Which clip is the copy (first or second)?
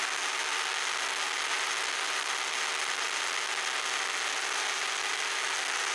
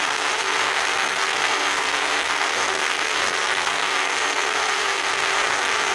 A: second